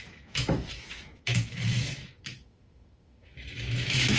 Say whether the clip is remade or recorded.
remade